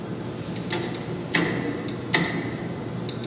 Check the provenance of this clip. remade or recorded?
recorded